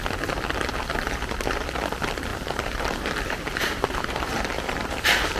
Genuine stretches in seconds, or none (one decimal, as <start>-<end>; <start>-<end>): 0.0-2.3